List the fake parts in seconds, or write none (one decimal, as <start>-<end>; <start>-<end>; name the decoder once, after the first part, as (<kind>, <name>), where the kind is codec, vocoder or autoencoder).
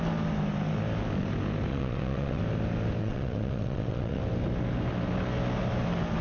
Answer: 1.7-2.4 (vocoder, WaveNeXt); 3.0-4.2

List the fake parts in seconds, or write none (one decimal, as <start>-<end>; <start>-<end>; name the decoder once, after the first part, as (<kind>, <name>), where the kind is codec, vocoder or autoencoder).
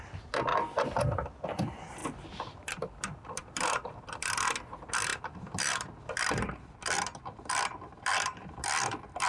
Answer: 0.0-0.5 (vocoder, BigVGAN v2); 1.4-9.3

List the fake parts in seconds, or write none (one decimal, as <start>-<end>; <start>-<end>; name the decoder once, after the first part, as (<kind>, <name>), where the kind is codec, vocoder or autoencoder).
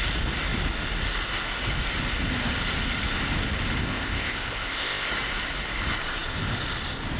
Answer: 3.8-5.1 (codec, ZipCodec)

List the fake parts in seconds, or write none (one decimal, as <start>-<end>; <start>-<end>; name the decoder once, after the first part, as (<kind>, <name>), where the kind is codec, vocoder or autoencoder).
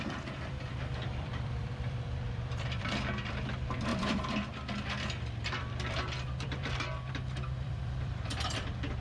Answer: 0.0-9.0 (vocoder, BigVGAN v2)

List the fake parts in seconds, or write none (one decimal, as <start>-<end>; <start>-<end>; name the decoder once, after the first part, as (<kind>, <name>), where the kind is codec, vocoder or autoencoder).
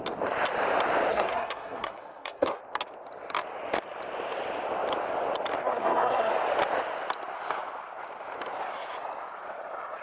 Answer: 1.1-2.6 (codec, SNAC); 5.6-6.3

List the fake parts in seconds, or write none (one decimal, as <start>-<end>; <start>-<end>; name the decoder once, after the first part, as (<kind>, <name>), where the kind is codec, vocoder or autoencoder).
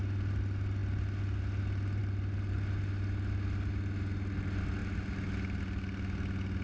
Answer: none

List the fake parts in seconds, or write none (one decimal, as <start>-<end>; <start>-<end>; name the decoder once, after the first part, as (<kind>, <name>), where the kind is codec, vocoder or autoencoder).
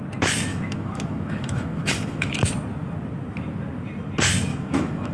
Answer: 0.5-2.5 (autoencoder, DAC-VAE); 4.5-5.1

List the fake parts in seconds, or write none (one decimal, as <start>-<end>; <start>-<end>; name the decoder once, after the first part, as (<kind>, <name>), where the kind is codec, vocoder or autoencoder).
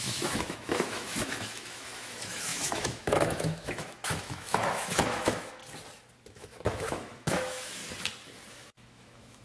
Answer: 0.0-5.6 (autoencoder, DAC-VAE); 6.3-7.8; 8.5-9.4